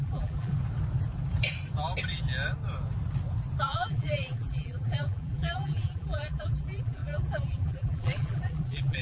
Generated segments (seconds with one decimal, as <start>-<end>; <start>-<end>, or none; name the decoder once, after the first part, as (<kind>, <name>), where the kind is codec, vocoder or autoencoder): 0.0-0.5 (vocoder, BigVGAN v2); 3.6-9.0